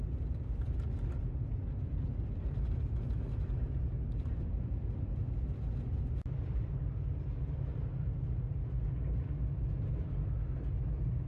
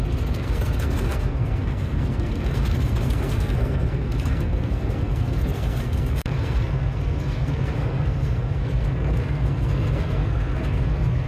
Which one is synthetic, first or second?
second